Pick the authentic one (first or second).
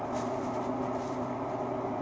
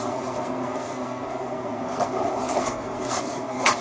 first